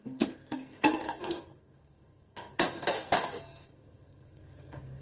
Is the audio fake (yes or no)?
yes